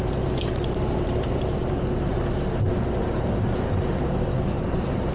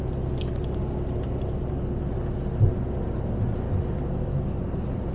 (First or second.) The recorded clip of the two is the second